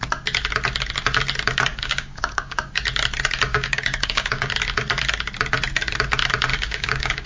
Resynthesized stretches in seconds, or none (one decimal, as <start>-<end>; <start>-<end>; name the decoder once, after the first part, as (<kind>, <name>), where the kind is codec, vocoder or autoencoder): 1.7-2.6 (codec, DAC); 3.5-4.5; 6.5-7.3